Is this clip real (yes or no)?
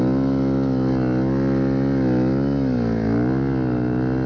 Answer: yes